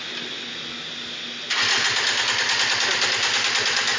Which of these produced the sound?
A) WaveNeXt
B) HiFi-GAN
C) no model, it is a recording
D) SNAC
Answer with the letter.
C